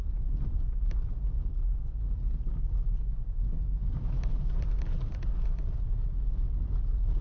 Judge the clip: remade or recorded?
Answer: recorded